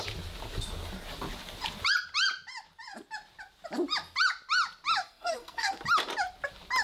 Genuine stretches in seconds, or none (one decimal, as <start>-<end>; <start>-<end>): 0.0-5.0; 5.7-6.8

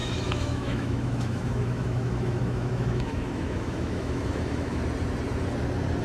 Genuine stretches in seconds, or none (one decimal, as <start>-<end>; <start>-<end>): 4.8-6.0

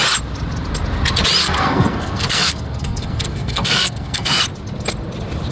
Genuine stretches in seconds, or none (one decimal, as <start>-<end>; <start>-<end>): 0.0-1.4; 4.4-5.5